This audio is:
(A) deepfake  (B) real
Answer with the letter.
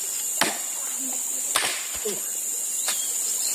B